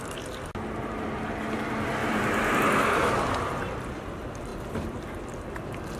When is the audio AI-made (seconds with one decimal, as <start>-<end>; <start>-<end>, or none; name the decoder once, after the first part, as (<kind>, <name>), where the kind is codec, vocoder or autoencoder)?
2.0-2.6 (vocoder, BigVGAN v2)